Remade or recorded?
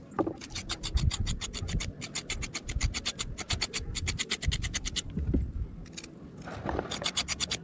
recorded